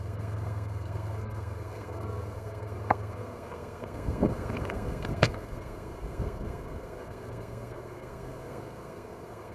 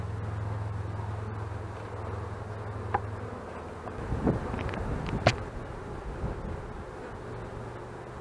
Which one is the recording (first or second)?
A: second